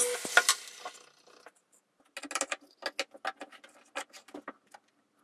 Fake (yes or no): no